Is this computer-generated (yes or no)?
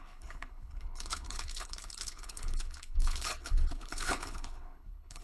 yes